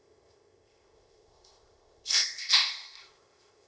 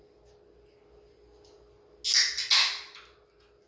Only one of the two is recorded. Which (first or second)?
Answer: second